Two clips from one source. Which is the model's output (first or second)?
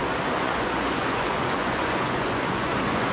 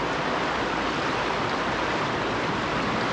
first